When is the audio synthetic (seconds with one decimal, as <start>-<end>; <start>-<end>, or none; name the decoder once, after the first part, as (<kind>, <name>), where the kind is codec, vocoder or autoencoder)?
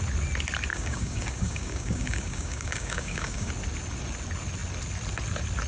0.7-3.5 (codec, DAC)